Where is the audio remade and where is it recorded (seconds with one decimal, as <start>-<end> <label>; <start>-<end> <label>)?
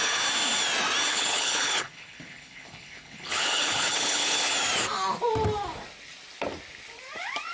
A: 0.0-1.1 recorded; 1.1-4.5 remade; 4.5-7.5 recorded